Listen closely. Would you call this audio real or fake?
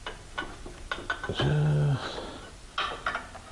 real